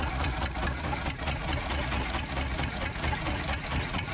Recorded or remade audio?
remade